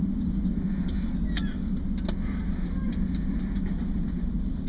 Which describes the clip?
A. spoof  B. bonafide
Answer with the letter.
B